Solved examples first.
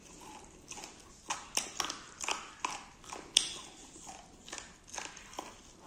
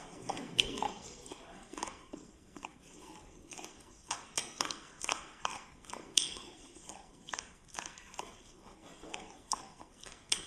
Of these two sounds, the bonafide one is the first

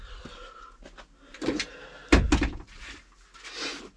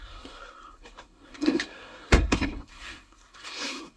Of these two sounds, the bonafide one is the first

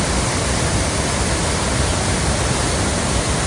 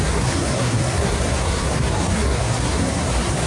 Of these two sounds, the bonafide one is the first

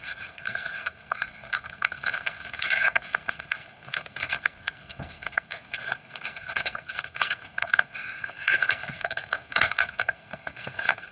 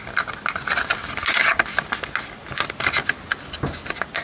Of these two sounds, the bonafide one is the second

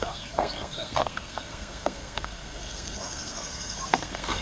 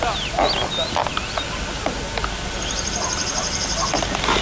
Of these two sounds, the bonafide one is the second